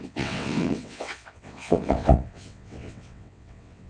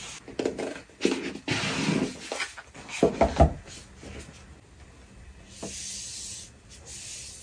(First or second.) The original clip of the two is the second